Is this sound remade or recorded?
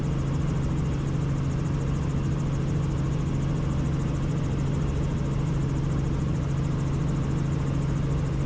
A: recorded